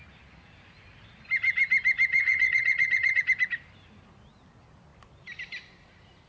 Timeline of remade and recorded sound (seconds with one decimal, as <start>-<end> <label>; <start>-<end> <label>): 0.0-2.1 recorded; 2.1-3.2 remade; 3.2-6.3 recorded